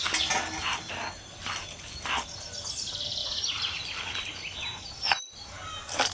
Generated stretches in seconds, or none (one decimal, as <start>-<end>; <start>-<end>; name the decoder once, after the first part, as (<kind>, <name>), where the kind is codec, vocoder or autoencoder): 3.2-3.8 (vocoder, Vocos)